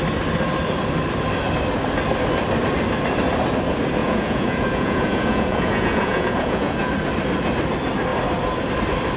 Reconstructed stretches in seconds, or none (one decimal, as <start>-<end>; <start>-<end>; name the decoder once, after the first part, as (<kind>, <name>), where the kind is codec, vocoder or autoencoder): 4.0-6.9 (vocoder, Vocos)